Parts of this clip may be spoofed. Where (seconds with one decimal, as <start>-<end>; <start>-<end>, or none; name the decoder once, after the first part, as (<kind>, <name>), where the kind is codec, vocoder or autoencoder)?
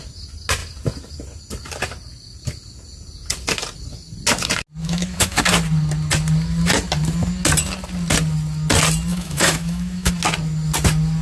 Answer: 4.8-5.4 (autoencoder, DAC-VAE); 9.1-10.1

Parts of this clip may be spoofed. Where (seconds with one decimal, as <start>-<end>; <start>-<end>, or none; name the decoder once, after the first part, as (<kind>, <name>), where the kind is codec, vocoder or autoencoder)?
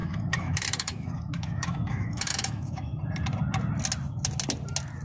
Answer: 0.0-3.0 (autoencoder, DAC-VAE)